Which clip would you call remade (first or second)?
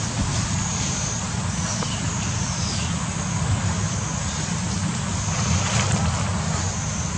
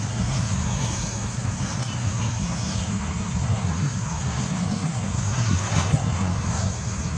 second